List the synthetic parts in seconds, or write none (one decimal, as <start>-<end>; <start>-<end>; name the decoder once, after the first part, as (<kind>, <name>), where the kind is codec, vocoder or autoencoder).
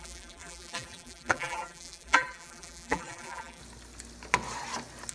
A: 0.0-3.6 (vocoder, BigVGAN v2)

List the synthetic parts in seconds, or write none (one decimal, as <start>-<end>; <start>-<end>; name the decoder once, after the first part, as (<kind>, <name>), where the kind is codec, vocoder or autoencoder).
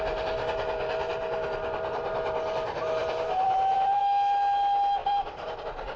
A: 3.0-4.0 (vocoder, BigVGAN v2); 5.0-5.6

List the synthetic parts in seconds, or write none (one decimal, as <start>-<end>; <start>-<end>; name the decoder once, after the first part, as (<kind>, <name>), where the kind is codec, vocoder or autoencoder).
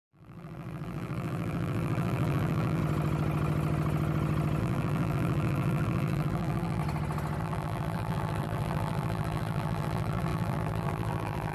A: 0.0-2.8 (vocoder, BigVGAN v2); 4.6-6.8; 7.4-11.5